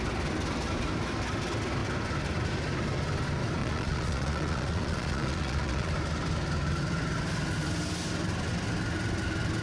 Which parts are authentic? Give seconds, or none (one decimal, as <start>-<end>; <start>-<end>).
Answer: 0.0-3.6; 5.9-9.6